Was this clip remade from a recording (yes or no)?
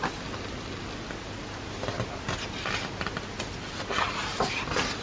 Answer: no